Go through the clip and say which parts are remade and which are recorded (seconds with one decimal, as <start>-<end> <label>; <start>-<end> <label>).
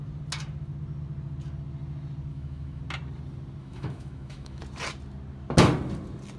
0.0-2.3 recorded; 2.3-2.8 remade; 2.8-3.6 recorded; 3.6-4.6 remade; 4.6-6.4 recorded